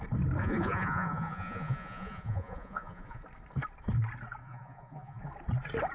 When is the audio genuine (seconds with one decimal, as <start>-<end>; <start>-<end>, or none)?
0.0-0.4; 3.2-4.4; 5.2-5.9